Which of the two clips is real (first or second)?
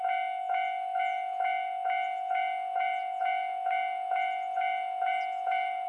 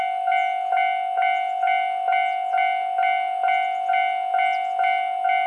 second